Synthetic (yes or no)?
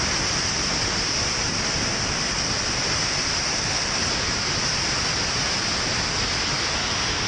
no